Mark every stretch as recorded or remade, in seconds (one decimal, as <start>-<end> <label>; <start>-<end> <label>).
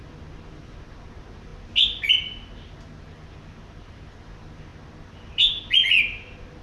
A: 0.0-6.6 recorded